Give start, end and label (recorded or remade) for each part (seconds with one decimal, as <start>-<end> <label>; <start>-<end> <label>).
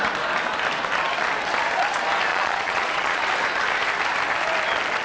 0.0-2.3 recorded; 2.3-3.2 remade; 3.2-5.0 recorded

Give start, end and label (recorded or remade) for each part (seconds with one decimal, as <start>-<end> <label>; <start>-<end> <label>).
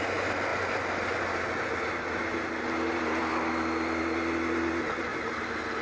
0.0-5.8 recorded